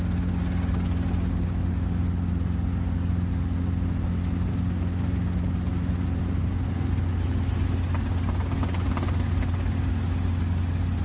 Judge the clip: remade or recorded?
recorded